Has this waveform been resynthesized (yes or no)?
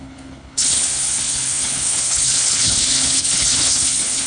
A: yes